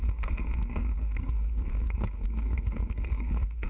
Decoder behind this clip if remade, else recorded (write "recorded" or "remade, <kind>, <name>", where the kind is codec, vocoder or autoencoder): remade, codec, SNAC